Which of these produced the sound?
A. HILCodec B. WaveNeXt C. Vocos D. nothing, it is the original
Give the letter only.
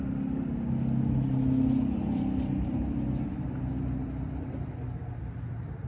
D